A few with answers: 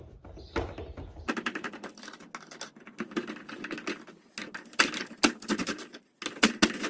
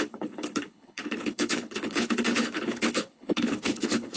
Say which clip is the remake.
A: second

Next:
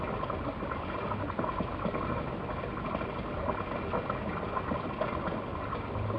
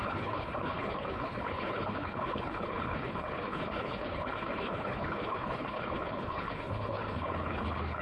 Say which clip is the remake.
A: second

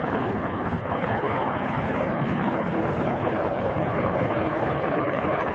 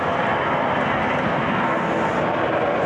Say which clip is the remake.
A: first